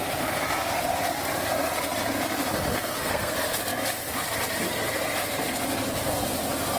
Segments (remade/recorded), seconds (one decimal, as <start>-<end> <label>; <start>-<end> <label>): 0.0-2.7 recorded; 2.7-3.3 remade; 3.3-6.8 recorded